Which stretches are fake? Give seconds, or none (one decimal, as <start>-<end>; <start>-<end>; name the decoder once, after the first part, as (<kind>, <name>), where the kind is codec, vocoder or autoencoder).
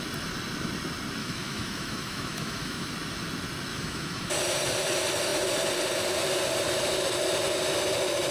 1.2-2.9 (autoencoder, DAC-VAE); 3.7-4.3